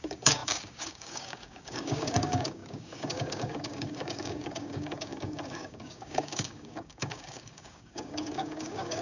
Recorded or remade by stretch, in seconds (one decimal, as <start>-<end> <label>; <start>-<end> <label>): 0.0-9.0 remade